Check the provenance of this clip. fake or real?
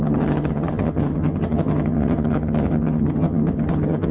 fake